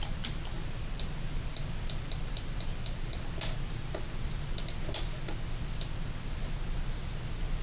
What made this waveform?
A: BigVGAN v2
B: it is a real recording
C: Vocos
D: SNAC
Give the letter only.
B